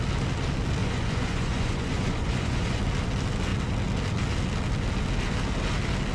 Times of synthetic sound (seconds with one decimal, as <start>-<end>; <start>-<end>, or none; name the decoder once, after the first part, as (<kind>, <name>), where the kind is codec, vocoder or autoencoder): 0.8-2.8 (vocoder, Vocos)